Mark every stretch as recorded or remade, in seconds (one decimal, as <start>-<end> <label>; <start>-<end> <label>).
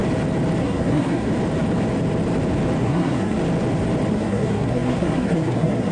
0.0-0.6 recorded; 0.6-1.3 remade; 1.3-2.8 recorded; 2.8-3.4 remade; 3.4-4.1 recorded; 4.1-5.9 remade